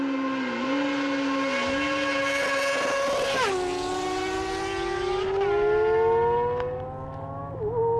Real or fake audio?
real